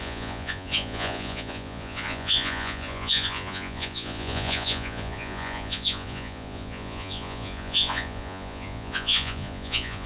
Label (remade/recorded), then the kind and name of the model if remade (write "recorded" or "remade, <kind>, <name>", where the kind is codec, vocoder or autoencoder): remade, vocoder, Vocos